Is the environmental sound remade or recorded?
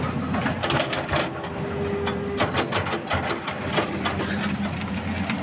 recorded